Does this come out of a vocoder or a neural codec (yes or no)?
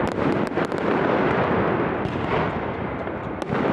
no